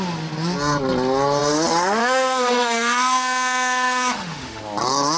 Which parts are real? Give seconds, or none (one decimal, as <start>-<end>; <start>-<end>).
0.0-2.0; 4.6-5.2